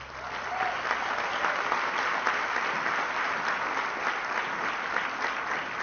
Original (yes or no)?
yes